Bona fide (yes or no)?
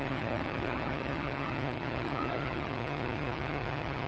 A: no